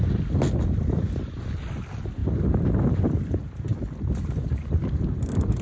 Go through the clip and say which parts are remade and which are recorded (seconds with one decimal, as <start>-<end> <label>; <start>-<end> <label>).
0.0-5.6 recorded